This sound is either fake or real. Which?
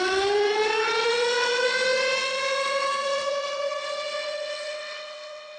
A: fake